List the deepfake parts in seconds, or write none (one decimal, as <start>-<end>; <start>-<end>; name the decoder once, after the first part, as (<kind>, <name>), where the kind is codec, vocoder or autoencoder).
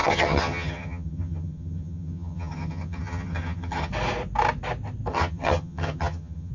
0.0-3.9 (vocoder, HiFi-GAN); 5.1-6.5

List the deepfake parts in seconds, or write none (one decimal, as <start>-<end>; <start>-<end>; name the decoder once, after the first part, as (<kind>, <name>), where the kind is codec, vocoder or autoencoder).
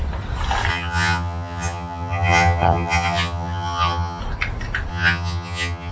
0.7-4.2 (vocoder, HiFi-GAN); 4.9-5.9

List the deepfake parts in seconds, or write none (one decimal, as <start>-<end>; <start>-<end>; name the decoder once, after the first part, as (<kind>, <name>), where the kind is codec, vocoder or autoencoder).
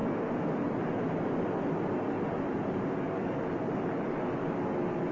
none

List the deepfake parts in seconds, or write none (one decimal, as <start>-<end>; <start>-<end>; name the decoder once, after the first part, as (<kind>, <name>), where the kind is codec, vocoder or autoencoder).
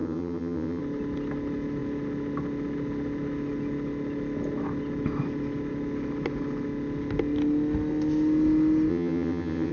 0.0-0.8 (vocoder, HiFi-GAN); 8.9-9.7